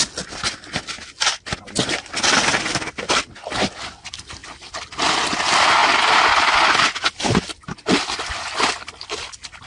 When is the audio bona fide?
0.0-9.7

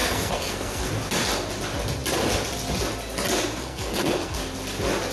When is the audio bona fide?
0.9-3.6; 4.4-5.1

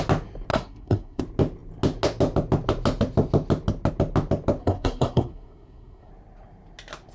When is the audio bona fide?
0.0-0.5; 1.2-4.6; 6.1-7.1

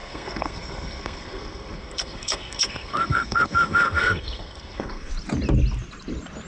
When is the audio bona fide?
5.1-6.5

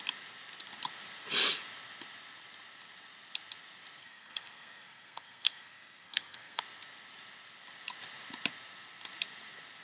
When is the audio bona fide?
0.0-4.0; 6.6-9.8

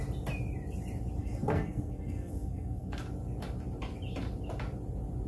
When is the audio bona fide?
0.0-1.2; 3.0-5.3

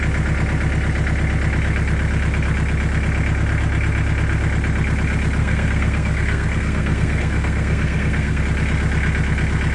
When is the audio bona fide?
0.0-5.4; 8.4-9.7

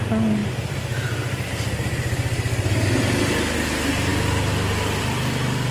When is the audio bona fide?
0.0-5.7